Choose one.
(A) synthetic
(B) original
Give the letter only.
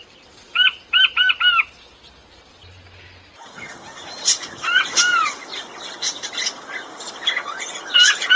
B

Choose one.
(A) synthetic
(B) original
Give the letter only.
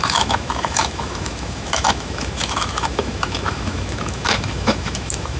A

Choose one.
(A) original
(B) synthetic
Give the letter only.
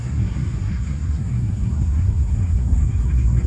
B